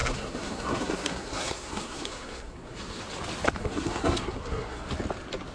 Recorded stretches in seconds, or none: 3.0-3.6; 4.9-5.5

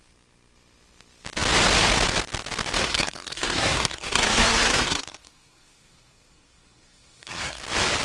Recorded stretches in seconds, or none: 0.0-2.8; 7.6-8.0

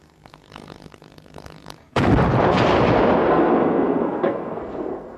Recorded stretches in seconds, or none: 2.1-3.3

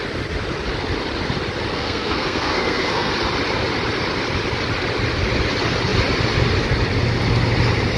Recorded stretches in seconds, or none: 0.0-1.7; 3.1-8.0

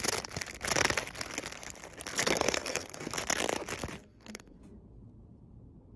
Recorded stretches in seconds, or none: 0.0-2.1; 3.1-4.0; 4.6-6.0

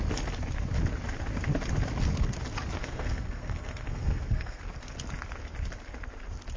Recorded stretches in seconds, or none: 0.0-2.8; 4.6-6.6

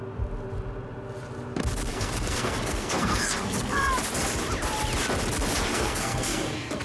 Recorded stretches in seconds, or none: 0.0-1.9; 3.9-5.7